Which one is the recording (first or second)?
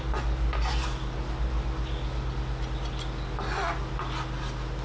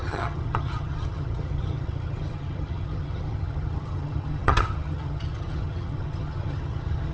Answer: first